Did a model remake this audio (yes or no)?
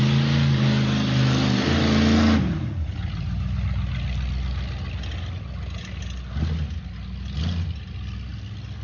no